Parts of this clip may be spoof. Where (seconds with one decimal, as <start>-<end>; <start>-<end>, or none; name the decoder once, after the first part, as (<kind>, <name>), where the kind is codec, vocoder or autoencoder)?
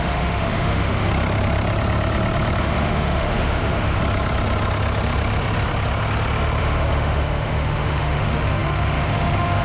0.0-1.1 (autoencoder, DAC-VAE); 2.6-4.0; 6.6-9.6